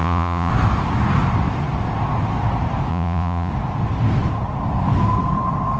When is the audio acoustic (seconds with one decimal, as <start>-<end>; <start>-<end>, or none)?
0.5-2.9; 3.5-5.8